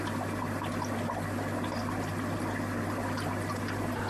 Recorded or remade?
recorded